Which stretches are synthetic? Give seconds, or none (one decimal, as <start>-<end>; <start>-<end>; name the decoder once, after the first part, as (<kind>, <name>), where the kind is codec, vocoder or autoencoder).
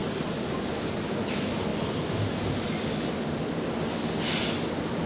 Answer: none